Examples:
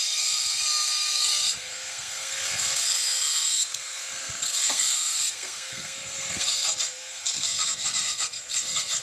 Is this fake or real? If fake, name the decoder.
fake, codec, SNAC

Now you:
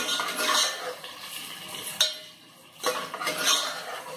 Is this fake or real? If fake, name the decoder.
real